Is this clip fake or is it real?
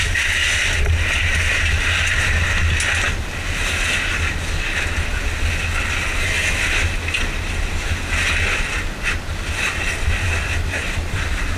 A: real